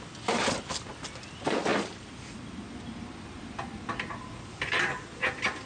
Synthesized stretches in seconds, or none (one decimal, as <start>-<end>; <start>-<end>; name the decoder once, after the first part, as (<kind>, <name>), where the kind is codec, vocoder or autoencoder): 0.0-5.7 (vocoder, BigVGAN v2)